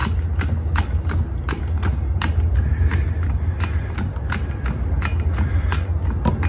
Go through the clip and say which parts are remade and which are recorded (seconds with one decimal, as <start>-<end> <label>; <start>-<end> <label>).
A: 0.0-6.5 recorded